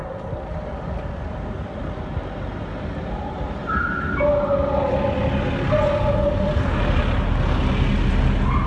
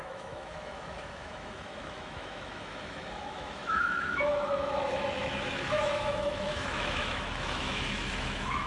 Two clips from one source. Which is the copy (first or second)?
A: second